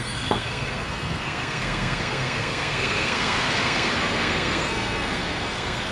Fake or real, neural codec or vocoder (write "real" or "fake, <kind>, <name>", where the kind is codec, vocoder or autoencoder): fake, codec, SNAC